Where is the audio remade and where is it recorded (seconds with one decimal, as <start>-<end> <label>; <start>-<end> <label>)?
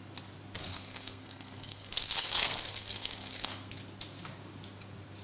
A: 0.0-0.6 recorded; 0.6-3.7 remade; 3.7-5.2 recorded